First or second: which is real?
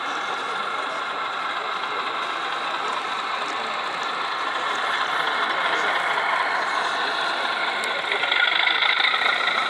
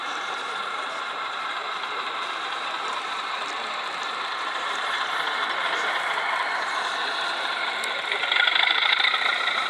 first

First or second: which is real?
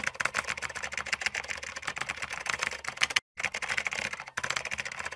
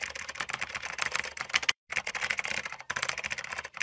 first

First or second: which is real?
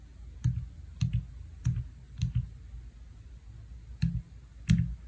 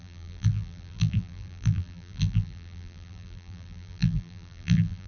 first